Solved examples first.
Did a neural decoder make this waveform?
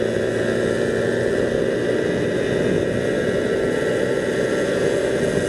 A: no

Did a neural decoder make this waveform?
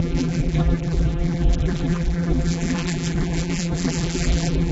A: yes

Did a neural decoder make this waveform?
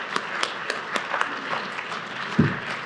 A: no